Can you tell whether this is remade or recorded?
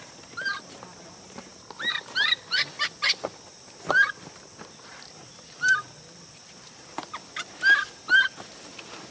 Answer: recorded